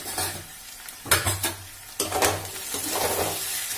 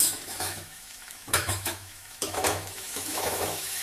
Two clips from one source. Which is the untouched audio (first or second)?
first